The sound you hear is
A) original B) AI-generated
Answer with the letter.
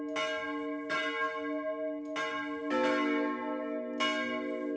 A